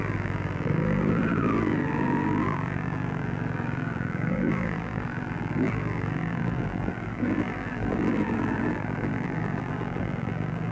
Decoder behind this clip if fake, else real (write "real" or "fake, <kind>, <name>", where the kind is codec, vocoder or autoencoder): fake, vocoder, BigVGAN v2